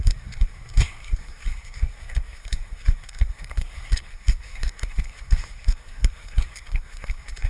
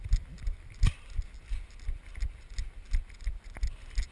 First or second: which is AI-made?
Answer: first